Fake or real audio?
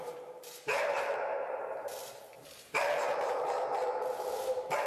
fake